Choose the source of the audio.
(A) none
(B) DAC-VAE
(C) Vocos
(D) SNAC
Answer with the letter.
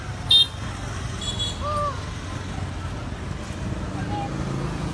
A